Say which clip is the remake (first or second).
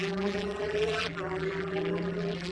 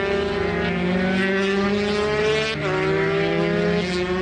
first